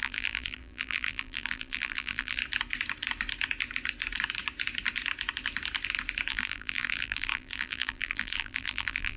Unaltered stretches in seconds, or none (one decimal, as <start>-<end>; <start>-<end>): 2.4-6.3